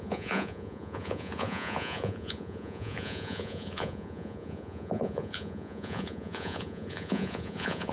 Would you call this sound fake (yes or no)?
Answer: yes